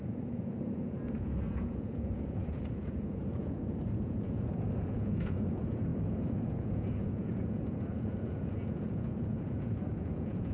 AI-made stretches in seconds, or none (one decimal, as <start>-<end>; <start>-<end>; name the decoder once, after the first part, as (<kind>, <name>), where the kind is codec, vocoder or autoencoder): 0.0-10.5 (vocoder, Vocos)